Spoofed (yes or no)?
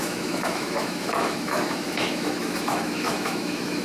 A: yes